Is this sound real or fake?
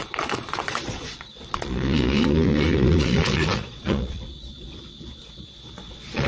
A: fake